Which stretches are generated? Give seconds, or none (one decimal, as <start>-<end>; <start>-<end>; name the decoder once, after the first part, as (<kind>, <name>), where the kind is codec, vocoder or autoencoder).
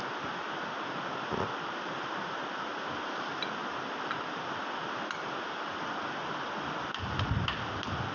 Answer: none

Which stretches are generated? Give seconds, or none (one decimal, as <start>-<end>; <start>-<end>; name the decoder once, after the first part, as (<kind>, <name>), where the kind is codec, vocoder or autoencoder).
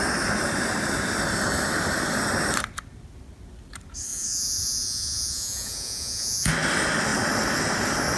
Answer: 4.1-6.5 (vocoder, Vocos)